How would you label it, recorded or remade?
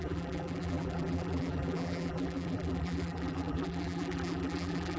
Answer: remade